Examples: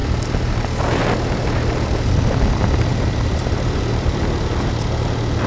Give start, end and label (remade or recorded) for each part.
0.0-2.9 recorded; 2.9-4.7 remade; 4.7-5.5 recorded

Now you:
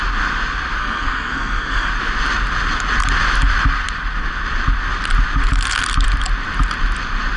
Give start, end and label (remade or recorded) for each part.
0.0-0.8 recorded; 0.8-1.9 remade; 1.9-7.4 recorded

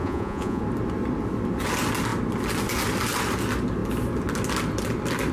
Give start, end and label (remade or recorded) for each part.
0.0-0.6 remade; 0.6-5.3 recorded

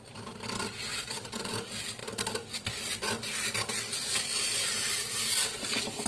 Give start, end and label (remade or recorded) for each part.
0.0-6.1 recorded

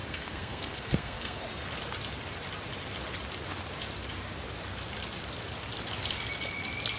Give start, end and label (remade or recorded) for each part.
0.0-1.4 remade; 1.4-7.0 recorded

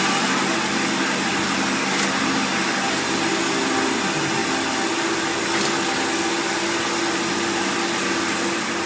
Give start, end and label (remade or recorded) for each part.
0.0-8.9 recorded

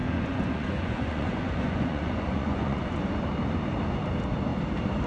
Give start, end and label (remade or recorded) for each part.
0.0-3.0 remade; 3.0-5.1 recorded

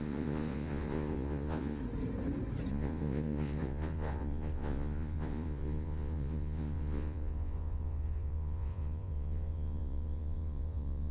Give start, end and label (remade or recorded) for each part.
0.0-1.8 remade; 1.8-2.7 recorded; 2.7-11.1 remade